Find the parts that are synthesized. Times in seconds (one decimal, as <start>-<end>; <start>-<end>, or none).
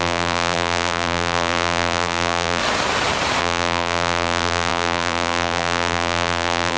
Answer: 0.0-2.6; 3.4-6.8